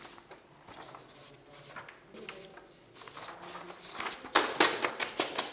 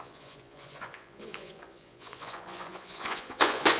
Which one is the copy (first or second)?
second